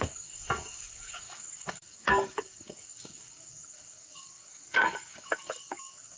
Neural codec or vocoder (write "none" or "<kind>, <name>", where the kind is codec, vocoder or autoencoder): codec, DAC